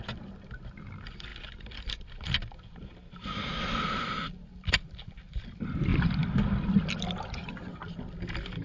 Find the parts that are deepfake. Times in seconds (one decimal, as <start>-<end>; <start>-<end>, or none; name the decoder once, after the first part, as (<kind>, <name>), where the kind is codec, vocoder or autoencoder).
none